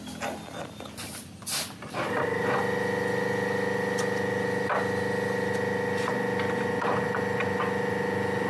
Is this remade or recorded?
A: recorded